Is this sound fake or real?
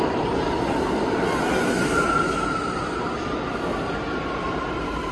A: real